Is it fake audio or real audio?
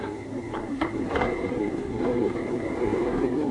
fake